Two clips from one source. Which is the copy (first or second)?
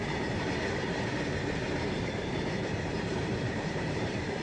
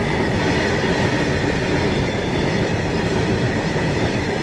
first